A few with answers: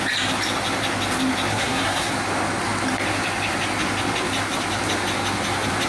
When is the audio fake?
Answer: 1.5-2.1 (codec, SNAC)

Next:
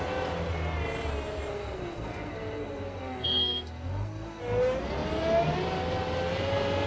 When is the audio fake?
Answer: 1.5-4.4 (codec, SNAC)

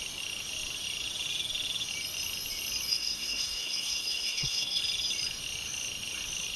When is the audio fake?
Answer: 2.9-4.8 (codec, SNAC)

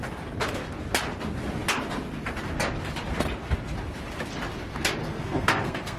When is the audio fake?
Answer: 5.0-6.0 (codec, SNAC)

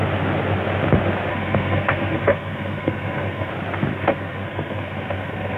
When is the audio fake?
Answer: 1.3-3.5 (codec, SNAC); 3.9-5.6

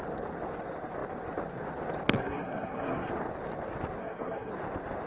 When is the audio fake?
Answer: 2.2-3.1 (codec, SNAC); 4.0-4.5

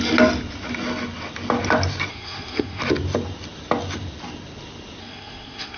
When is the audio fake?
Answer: 2.1-2.8 (codec, SNAC); 5.0-5.8